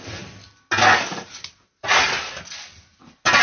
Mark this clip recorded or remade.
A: recorded